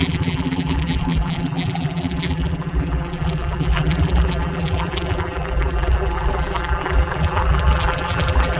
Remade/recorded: remade